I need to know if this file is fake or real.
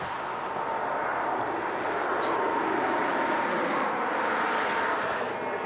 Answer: real